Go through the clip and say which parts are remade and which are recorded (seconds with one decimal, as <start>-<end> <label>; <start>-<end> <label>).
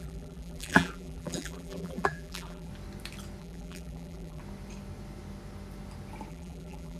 0.0-2.7 remade; 2.7-3.4 recorded; 3.4-4.4 remade; 4.4-6.3 recorded; 6.3-7.0 remade